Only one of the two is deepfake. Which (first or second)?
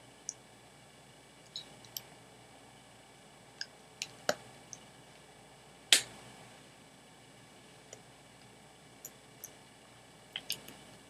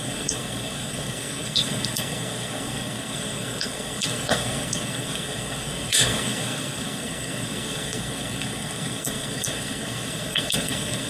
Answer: second